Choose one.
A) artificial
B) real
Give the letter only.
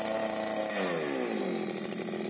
B